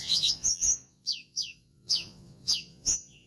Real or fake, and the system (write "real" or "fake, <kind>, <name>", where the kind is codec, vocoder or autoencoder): fake, vocoder, Vocos